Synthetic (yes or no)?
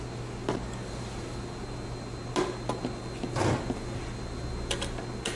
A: no